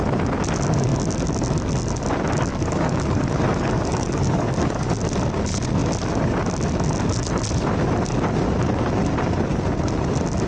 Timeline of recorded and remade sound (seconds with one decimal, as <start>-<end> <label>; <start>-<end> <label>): 0.0-2.5 recorded; 2.5-5.0 remade; 5.0-10.5 recorded